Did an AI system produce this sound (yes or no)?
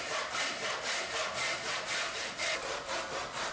no